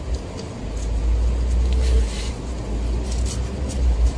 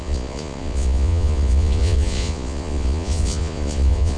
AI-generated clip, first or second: second